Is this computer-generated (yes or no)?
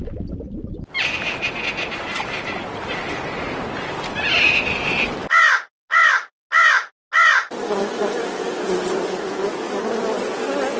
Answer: no